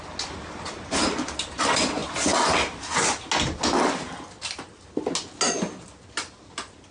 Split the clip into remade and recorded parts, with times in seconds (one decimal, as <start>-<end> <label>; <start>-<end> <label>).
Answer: 0.0-6.9 recorded